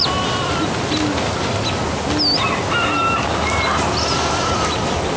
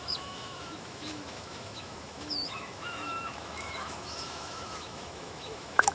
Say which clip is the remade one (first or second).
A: second